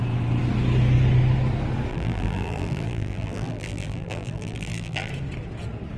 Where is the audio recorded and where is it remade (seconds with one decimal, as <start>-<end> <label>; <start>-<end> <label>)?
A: 0.0-1.9 recorded; 1.9-5.1 remade; 5.1-6.0 recorded